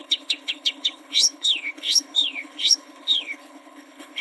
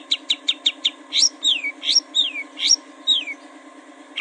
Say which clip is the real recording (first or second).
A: second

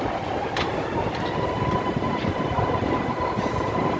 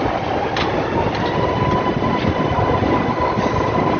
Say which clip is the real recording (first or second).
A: second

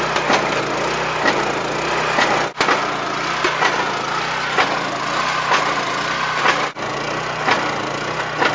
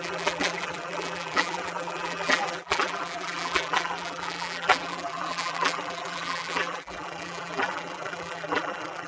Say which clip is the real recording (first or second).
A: first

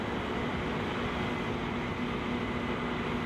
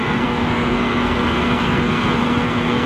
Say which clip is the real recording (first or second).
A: first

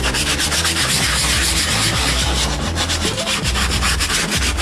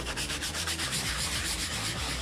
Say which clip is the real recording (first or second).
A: first